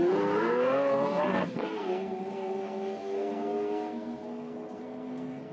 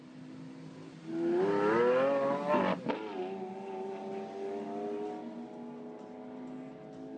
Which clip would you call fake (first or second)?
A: first